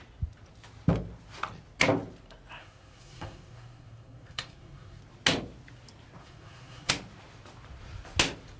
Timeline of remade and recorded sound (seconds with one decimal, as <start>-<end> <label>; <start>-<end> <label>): 0.0-2.6 recorded; 2.6-5.0 remade; 5.0-6.2 recorded; 6.2-6.9 remade; 6.9-8.6 recorded

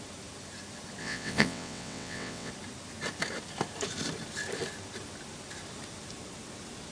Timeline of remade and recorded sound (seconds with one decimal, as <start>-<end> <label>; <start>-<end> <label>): 0.0-1.0 recorded; 1.0-2.5 remade; 2.5-6.9 recorded